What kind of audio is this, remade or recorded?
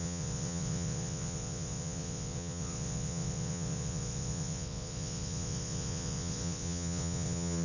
remade